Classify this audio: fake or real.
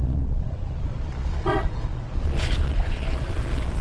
fake